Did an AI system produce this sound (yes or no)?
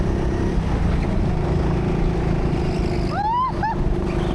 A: no